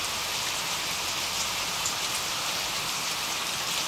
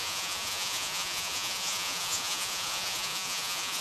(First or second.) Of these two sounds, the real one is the first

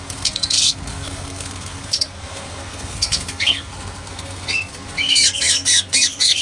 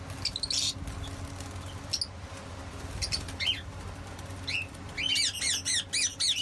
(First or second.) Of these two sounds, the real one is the second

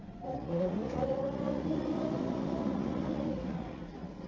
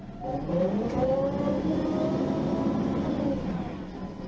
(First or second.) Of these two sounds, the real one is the second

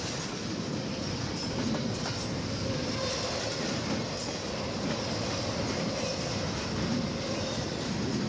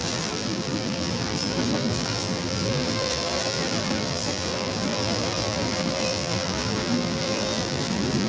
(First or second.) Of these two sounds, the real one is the first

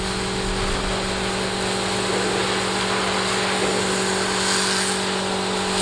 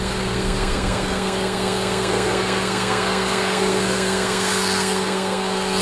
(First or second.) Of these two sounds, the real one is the first